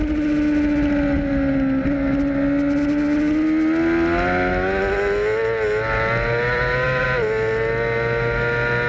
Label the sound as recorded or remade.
recorded